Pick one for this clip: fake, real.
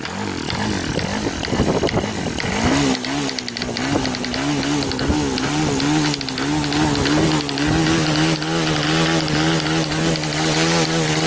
real